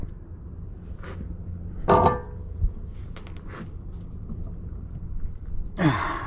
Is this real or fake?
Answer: real